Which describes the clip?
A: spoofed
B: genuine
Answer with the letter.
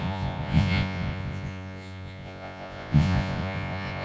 A